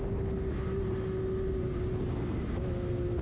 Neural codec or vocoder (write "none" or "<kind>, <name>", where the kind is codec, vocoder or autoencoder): none